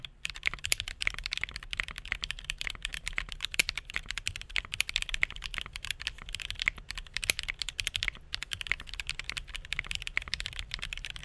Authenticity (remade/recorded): remade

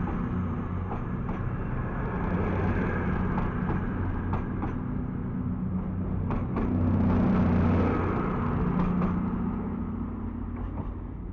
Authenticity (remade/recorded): recorded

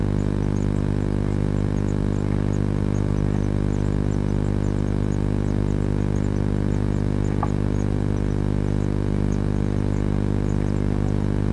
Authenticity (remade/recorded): recorded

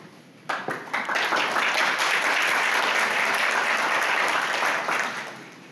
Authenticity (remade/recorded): recorded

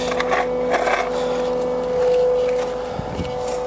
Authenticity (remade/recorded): recorded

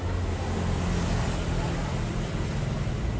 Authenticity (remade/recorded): recorded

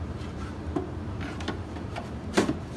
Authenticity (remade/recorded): remade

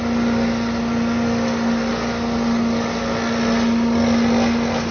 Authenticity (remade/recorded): recorded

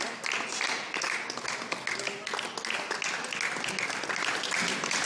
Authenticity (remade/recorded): recorded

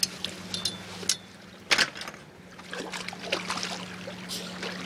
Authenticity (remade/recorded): recorded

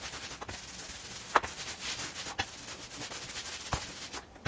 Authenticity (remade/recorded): recorded